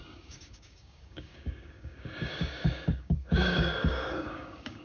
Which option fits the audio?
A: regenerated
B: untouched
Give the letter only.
A